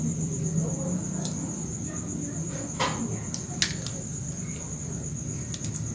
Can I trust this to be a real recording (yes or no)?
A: yes